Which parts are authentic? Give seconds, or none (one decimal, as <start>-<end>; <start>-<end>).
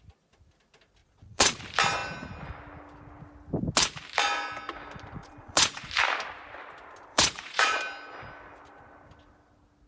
0.0-1.0; 1.6-5.2; 5.9-7.1; 7.8-9.9